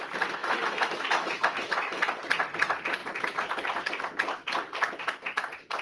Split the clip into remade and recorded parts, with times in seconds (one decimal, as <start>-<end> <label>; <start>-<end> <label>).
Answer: 0.0-0.4 recorded; 0.4-2.1 remade; 2.1-5.8 recorded